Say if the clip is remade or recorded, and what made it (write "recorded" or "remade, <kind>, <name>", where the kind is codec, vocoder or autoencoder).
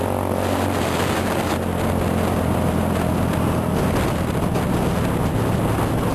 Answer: recorded